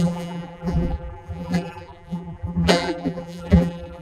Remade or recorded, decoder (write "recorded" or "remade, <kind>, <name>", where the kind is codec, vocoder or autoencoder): remade, vocoder, BigVGAN v2